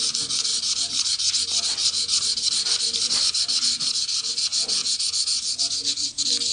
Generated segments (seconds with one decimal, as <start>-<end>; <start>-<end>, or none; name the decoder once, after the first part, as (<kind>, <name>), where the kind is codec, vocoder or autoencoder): 4.8-6.1 (vocoder, Vocos)